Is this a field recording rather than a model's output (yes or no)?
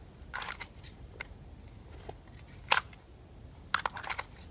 yes